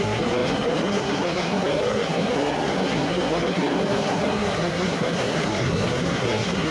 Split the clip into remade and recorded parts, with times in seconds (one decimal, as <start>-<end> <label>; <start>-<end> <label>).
0.0-6.7 remade